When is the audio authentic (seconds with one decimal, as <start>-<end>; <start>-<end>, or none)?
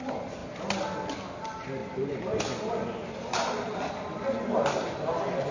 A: 0.0-1.8; 2.4-3.0; 3.9-5.5